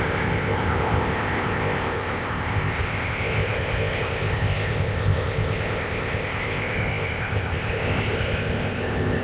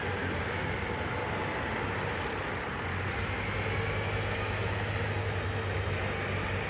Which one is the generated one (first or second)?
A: first